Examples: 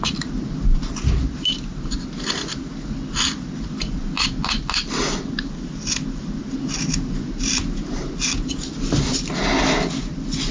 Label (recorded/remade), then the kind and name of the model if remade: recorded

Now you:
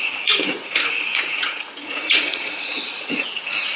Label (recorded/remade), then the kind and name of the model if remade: remade, vocoder, Vocos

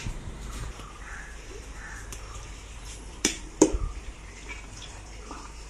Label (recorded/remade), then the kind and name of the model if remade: remade, vocoder, BigVGAN v2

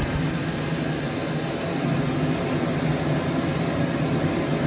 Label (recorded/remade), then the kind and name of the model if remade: recorded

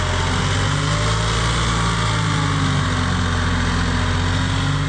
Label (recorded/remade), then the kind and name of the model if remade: recorded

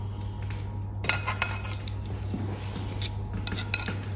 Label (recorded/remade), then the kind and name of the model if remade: recorded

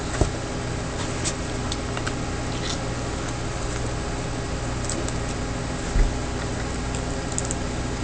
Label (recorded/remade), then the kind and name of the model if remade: recorded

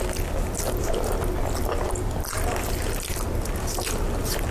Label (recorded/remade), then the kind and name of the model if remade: recorded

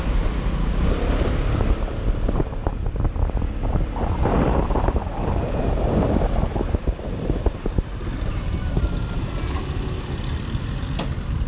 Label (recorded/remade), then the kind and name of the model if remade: recorded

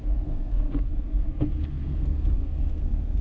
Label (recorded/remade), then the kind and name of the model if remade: remade, codec, SNAC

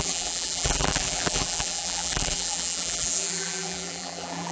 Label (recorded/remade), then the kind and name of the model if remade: remade, vocoder, BigVGAN v2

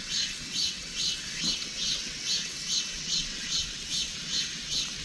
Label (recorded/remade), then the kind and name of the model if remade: remade, vocoder, WaveNeXt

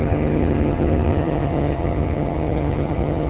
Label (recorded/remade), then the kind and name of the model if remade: remade, vocoder, HiFi-GAN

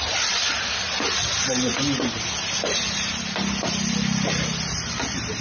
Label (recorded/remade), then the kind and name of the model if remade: recorded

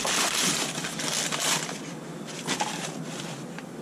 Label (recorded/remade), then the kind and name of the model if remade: recorded